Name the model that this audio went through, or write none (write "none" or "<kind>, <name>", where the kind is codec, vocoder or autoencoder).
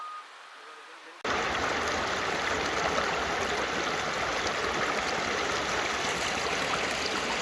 none